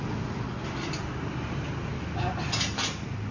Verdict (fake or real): real